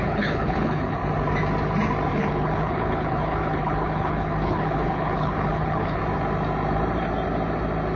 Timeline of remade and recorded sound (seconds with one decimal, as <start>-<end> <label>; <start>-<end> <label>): 0.0-1.0 remade; 1.0-2.1 recorded; 2.1-6.0 remade; 6.0-8.0 recorded